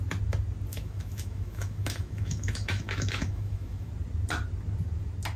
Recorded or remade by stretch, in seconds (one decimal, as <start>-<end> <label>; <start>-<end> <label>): 0.0-0.7 recorded; 0.7-3.9 remade; 3.9-5.4 recorded